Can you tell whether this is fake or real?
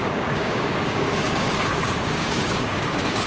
fake